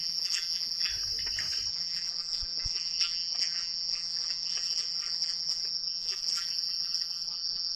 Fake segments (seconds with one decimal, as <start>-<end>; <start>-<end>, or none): 0.0-0.9; 1.7-7.8